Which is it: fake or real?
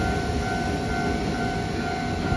real